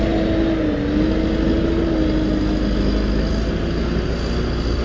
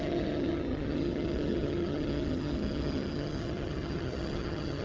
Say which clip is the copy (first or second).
second